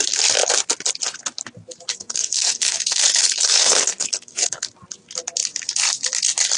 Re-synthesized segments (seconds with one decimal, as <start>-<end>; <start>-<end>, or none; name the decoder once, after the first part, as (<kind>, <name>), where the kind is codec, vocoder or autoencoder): 1.9-4.7 (codec, SNAC)